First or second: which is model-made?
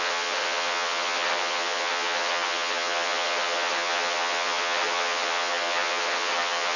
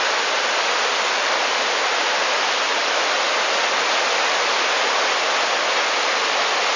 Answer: first